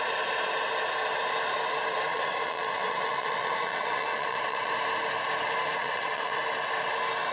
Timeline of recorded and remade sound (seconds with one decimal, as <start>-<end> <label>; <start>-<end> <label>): 0.0-2.1 recorded; 2.1-4.7 remade; 4.7-5.8 recorded; 5.8-6.4 remade; 6.4-7.3 recorded